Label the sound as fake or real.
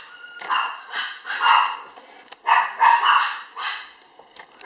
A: real